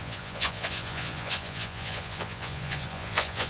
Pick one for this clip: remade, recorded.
remade